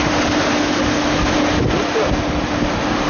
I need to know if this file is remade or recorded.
recorded